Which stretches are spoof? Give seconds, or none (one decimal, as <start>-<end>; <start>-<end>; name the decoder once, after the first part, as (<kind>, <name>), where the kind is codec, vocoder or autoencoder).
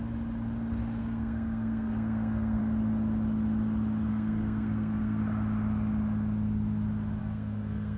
1.0-2.6 (codec, SNAC); 4.1-5.2; 7.2-8.0